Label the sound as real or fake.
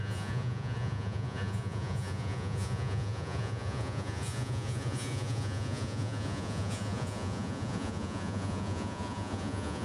fake